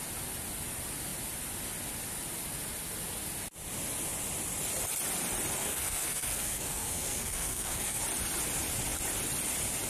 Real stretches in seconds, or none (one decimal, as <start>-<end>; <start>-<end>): 0.0-5.6; 8.0-9.9